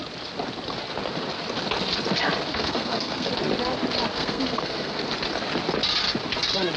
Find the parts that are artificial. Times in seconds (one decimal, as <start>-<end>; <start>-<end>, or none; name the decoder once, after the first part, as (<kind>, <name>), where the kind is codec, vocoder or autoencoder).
2.5-3.3 (codec, SNAC); 4.1-5.0